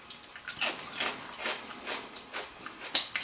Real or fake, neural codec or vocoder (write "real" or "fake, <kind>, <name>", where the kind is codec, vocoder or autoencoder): real